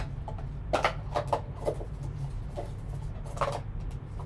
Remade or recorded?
recorded